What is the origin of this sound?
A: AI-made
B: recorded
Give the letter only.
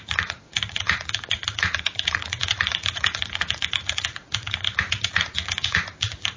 A